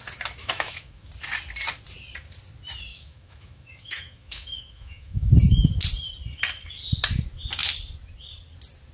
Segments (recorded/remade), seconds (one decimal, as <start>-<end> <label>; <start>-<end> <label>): 0.0-0.4 recorded; 0.4-1.1 remade; 1.1-2.9 recorded; 2.9-5.3 remade; 5.3-8.9 recorded